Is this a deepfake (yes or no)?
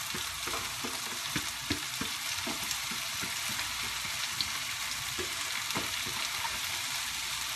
no